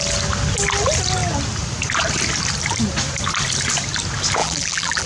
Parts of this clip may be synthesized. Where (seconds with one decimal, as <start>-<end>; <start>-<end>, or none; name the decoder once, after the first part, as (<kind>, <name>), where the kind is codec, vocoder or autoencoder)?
4.4-5.1 (vocoder, BigVGAN v2)